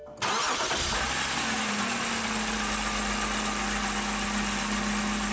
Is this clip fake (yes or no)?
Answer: no